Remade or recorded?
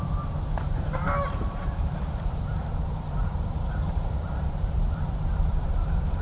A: remade